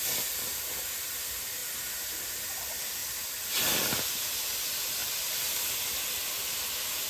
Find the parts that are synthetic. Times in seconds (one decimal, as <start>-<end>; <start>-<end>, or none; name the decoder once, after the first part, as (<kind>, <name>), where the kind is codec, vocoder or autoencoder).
none